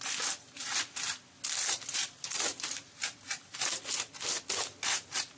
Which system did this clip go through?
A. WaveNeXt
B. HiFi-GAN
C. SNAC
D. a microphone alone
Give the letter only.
D